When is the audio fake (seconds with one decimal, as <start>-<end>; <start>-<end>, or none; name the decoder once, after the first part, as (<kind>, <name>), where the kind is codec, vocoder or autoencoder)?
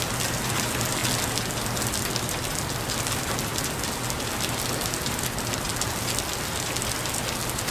none